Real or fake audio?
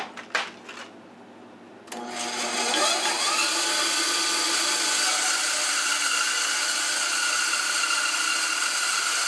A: real